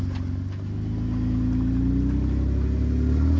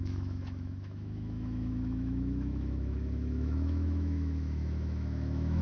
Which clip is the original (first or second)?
first